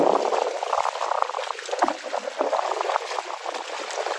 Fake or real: real